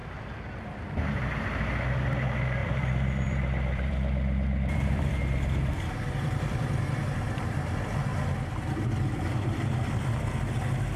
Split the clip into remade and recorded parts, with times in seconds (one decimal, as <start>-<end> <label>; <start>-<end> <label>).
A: 0.0-2.6 recorded; 2.6-5.1 remade; 5.1-8.1 recorded; 8.1-10.1 remade; 10.1-11.0 recorded